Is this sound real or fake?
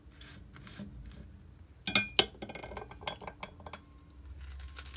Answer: real